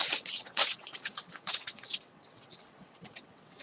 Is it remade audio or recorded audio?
remade